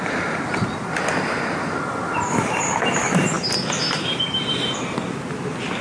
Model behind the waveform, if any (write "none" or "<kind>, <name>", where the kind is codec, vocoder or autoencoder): none